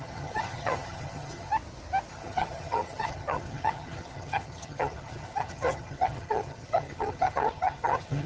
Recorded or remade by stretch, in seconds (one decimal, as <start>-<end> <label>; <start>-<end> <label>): 0.0-1.5 remade; 1.5-2.1 recorded; 2.1-8.3 remade